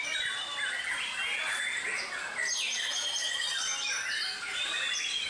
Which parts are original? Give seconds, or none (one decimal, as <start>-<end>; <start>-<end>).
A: 0.0-5.3